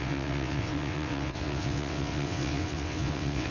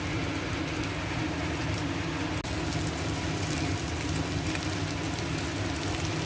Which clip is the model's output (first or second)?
first